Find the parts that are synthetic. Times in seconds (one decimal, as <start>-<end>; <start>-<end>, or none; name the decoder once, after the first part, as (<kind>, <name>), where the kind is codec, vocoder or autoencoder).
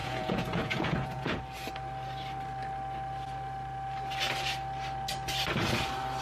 0.0-1.4 (vocoder, Vocos)